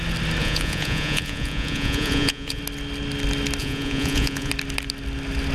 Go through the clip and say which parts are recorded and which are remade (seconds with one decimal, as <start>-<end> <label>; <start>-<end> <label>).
0.0-0.4 recorded; 0.4-2.6 remade; 2.6-3.6 recorded; 3.6-4.5 remade; 4.5-5.5 recorded